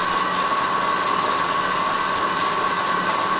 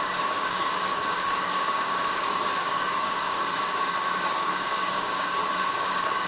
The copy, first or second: second